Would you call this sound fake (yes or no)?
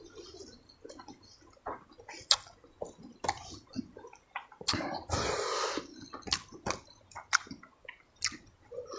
no